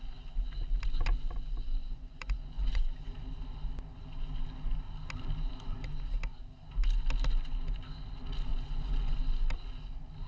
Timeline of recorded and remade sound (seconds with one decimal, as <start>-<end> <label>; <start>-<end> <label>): 0.0-1.8 recorded; 1.8-2.9 remade; 2.9-8.5 recorded; 8.5-9.2 remade; 9.2-10.3 recorded